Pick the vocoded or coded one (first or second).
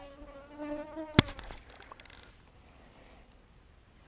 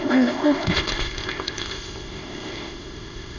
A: second